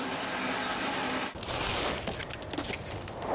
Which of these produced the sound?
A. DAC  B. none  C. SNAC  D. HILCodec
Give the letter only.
B